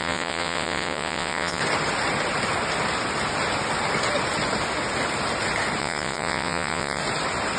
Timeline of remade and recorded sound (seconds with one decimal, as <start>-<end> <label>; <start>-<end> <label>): 0.0-1.6 remade; 1.6-5.8 recorded; 5.8-7.0 remade; 7.0-7.6 recorded